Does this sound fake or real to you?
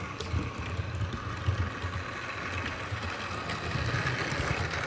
real